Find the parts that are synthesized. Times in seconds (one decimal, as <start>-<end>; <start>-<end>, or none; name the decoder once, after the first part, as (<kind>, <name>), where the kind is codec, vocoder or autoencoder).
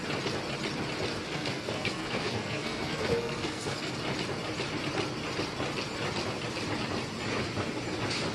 1.1-3.9 (codec, SNAC)